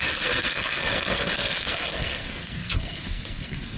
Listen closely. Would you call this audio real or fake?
fake